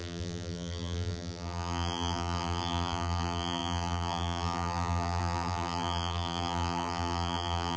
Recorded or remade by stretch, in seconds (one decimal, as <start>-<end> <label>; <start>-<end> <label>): 0.0-7.8 remade